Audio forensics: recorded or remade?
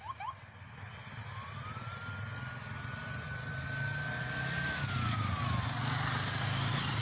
recorded